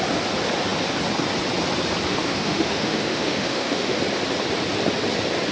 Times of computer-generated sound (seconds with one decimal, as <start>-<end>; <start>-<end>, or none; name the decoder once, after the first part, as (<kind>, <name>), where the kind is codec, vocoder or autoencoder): 2.1-4.0 (autoencoder, DAC-VAE)